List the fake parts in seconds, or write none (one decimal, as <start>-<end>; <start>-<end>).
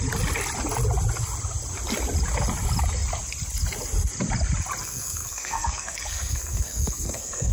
4.8-7.5